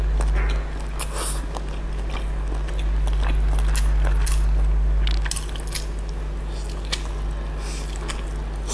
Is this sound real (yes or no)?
yes